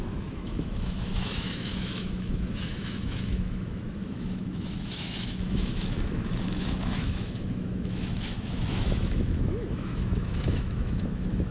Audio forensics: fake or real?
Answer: fake